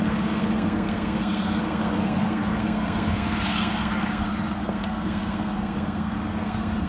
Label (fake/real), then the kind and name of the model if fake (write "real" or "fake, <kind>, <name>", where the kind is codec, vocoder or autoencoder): fake, codec, SNAC